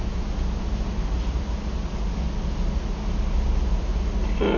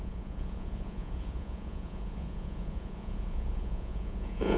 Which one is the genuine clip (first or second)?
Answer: first